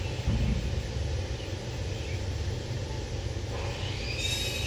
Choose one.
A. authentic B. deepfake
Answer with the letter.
A